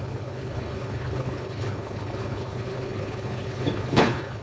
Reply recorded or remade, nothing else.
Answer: remade